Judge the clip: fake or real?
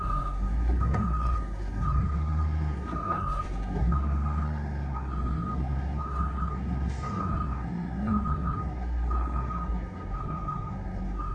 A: fake